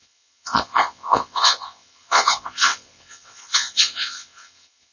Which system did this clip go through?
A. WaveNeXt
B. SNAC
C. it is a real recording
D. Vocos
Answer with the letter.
A